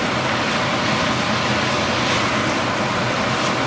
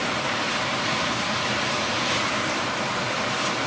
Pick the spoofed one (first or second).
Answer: second